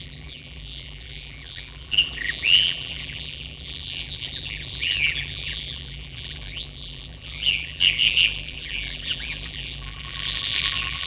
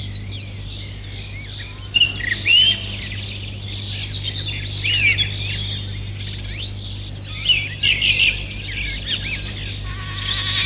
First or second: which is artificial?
first